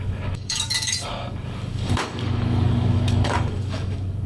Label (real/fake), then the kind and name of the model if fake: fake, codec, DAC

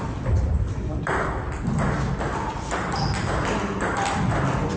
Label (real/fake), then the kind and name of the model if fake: real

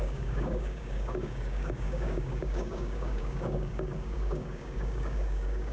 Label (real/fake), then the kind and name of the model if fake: fake, codec, DAC